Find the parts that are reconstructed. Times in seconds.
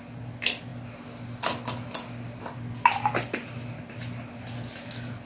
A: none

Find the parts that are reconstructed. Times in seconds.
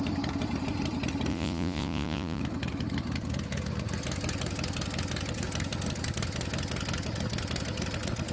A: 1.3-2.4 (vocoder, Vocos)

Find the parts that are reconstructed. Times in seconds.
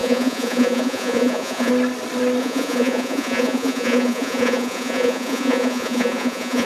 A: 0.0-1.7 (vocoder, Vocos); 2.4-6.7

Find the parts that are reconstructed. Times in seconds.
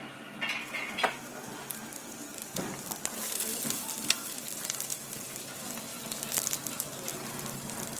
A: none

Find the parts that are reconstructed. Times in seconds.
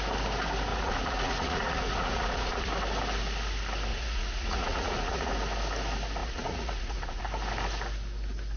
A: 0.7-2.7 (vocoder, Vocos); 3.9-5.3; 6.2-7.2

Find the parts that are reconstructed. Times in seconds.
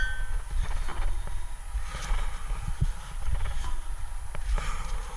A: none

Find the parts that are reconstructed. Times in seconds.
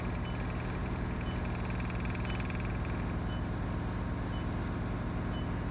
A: 0.8-1.4 (vocoder, Vocos)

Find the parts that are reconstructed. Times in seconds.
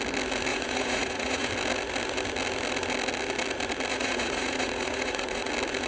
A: 0.5-1.5 (vocoder, Vocos); 3.9-5.5